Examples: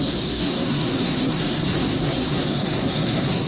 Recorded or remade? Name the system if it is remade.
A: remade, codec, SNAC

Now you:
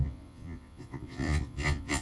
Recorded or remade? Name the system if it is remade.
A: remade, vocoder, Vocos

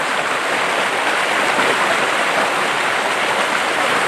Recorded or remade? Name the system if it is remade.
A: recorded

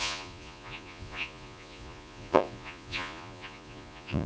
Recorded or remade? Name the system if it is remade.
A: remade, vocoder, Vocos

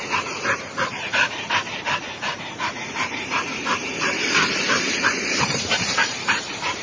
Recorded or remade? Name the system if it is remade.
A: remade, vocoder, BigVGAN v2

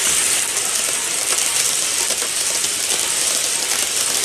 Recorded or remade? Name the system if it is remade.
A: recorded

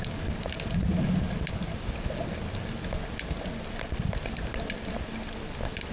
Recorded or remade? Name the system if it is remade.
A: recorded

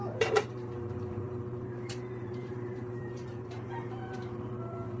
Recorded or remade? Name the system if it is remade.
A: remade, vocoder, BigVGAN v2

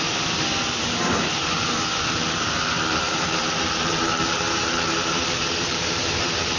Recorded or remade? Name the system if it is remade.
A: remade, vocoder, BigVGAN v2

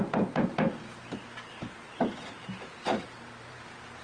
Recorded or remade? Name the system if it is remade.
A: remade, vocoder, BigVGAN v2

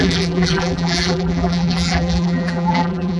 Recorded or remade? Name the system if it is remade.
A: remade, vocoder, BigVGAN v2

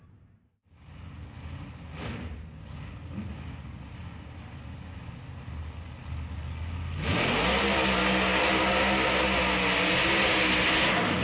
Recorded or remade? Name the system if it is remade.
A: recorded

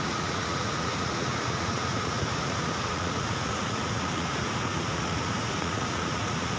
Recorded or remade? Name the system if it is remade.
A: remade, vocoder, Vocos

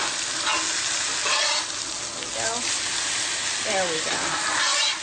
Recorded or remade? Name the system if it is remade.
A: recorded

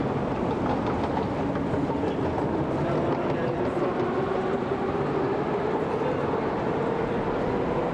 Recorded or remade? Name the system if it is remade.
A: recorded